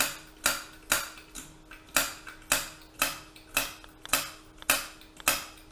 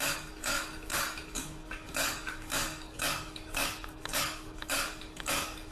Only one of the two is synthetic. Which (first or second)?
second